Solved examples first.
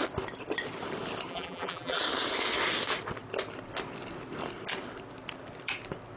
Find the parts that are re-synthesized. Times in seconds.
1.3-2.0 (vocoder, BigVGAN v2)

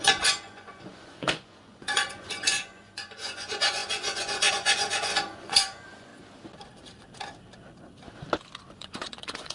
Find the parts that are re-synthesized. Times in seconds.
0.0-6.1 (vocoder, Vocos); 8.7-9.5